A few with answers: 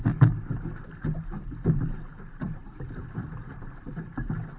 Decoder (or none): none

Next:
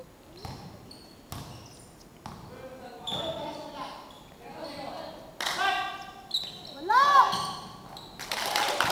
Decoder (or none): none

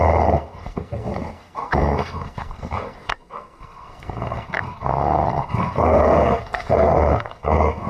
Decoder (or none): codec, SNAC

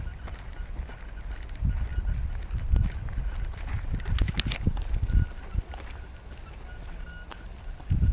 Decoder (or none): none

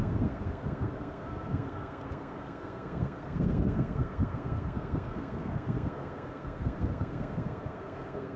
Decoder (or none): codec, SNAC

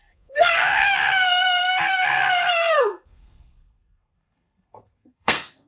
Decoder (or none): codec, SNAC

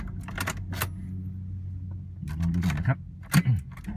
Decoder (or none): none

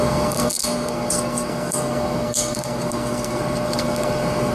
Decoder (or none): codec, SNAC